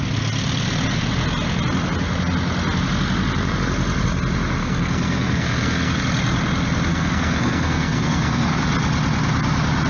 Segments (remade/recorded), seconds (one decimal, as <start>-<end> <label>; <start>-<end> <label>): 0.0-4.6 recorded; 4.6-6.0 remade; 6.0-6.9 recorded; 6.9-8.6 remade; 8.6-9.9 recorded